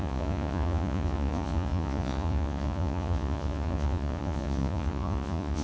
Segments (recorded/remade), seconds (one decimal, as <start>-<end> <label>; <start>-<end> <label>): 0.0-5.6 remade